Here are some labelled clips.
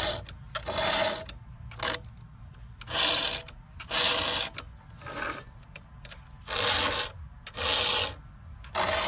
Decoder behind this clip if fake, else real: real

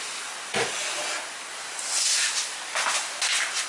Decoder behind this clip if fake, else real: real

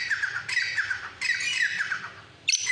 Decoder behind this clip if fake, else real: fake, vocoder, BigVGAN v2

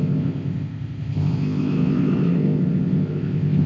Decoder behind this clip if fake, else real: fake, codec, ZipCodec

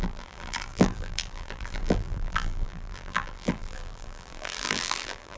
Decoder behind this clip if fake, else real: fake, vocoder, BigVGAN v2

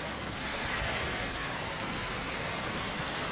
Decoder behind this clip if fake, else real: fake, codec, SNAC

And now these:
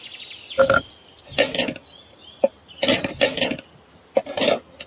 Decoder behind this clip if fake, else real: real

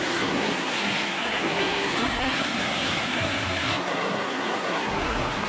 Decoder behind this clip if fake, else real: fake, codec, SNAC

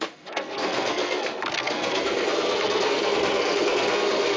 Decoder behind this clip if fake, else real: fake, codec, SNAC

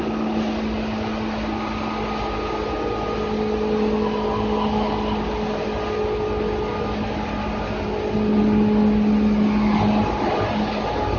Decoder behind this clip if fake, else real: real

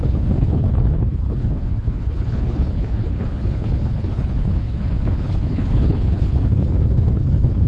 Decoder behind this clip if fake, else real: fake, codec, HILCodec